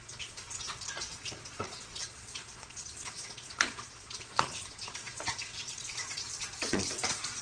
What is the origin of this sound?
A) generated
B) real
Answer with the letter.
A